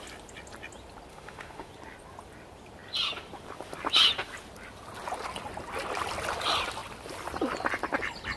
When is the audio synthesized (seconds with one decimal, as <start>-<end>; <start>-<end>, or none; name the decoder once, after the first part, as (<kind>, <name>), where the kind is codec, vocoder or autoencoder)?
1.1-1.7 (autoencoder, DAC-VAE)